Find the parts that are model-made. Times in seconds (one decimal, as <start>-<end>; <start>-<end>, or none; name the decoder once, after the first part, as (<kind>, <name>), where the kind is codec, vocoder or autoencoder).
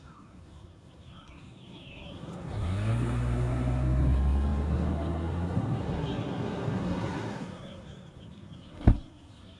0.0-9.6 (codec, SNAC)